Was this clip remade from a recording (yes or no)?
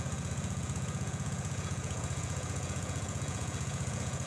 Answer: yes